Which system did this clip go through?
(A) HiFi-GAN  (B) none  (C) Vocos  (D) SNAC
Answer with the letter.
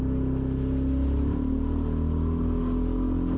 B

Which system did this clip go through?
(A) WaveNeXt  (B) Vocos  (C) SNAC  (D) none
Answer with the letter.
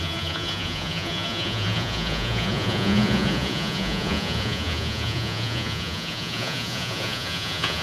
B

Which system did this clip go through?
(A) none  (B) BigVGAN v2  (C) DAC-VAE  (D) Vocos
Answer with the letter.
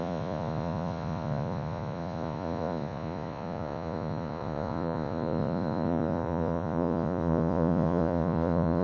D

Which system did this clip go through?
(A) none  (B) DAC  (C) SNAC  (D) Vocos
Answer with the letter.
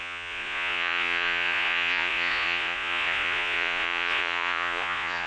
D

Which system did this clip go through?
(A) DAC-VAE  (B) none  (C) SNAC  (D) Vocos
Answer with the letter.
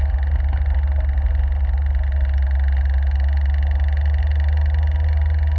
B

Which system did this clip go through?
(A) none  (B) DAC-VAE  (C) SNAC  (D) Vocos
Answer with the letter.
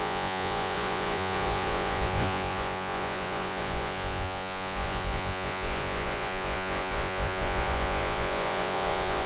D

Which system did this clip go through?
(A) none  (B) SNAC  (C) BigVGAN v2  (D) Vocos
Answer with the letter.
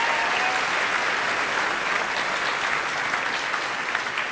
A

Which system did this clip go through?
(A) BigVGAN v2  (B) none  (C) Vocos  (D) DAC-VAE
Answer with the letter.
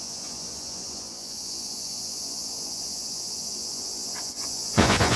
C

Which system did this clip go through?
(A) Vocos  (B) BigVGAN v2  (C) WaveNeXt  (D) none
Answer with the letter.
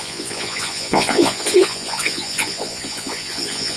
A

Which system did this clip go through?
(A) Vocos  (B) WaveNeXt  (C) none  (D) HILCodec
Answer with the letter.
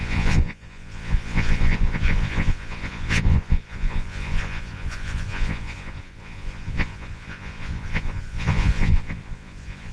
A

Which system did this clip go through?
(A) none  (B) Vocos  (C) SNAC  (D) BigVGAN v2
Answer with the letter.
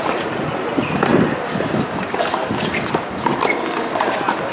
A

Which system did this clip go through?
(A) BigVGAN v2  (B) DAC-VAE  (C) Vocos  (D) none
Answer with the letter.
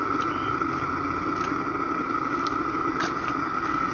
D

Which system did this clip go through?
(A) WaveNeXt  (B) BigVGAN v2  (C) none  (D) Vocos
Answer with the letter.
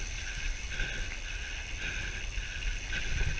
C